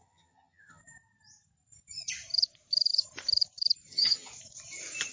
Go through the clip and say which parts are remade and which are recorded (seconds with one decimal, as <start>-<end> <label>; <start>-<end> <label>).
0.0-0.8 remade; 0.8-3.9 recorded; 3.9-4.3 remade; 4.3-5.1 recorded